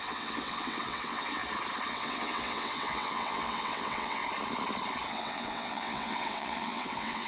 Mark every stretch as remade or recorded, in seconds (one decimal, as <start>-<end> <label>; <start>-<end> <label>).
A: 0.0-1.4 remade; 1.4-1.9 recorded; 1.9-4.2 remade; 4.2-5.1 recorded; 5.1-7.3 remade